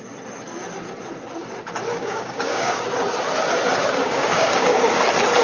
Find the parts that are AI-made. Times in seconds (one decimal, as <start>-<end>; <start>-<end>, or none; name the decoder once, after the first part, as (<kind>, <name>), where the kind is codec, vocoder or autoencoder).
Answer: 1.9-2.8 (codec, DAC); 3.8-5.0